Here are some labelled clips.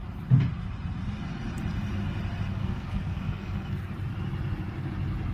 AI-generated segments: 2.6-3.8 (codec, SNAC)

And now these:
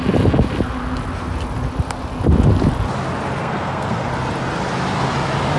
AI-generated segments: 3.4-4.1 (codec, SNAC)

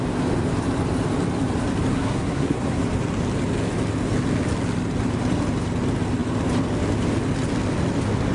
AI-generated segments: 1.9-2.8 (codec, SNAC)